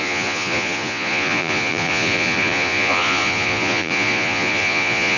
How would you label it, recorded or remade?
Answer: remade